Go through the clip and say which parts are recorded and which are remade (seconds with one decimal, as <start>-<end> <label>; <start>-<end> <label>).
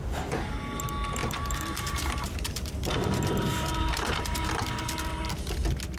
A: 0.0-1.2 recorded; 1.2-4.5 remade; 4.5-6.0 recorded